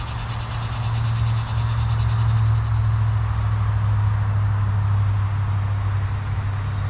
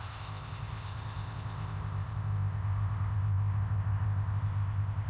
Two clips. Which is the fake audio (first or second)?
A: second